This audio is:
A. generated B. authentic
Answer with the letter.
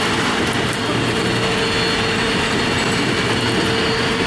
B